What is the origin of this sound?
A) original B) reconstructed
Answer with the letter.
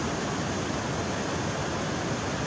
A